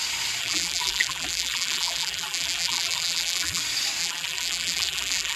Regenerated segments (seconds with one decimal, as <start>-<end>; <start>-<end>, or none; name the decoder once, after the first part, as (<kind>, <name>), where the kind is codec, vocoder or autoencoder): 0.4-3.6 (vocoder, BigVGAN v2); 4.0-5.4